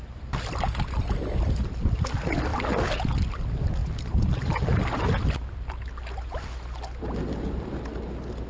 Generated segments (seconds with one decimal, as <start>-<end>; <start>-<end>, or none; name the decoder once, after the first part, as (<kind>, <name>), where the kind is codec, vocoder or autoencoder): none